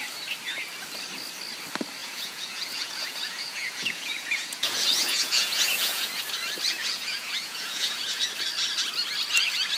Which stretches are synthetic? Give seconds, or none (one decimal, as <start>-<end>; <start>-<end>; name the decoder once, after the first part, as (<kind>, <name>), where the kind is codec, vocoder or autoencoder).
2.0-6.2 (vocoder, Vocos); 6.8-8.2